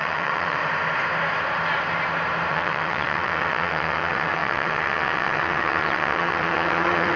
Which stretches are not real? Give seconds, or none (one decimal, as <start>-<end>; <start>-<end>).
0.0-0.6; 2.5-7.2